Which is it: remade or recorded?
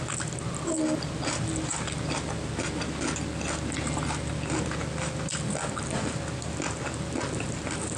recorded